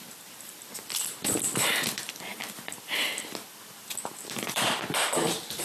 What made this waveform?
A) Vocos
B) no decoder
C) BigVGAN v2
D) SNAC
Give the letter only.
C